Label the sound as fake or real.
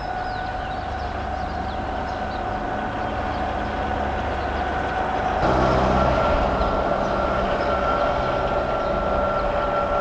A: real